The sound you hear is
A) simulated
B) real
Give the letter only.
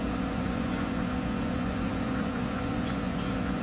A